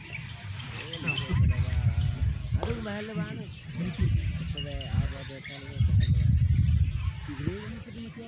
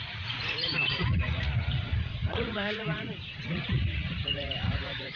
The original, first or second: first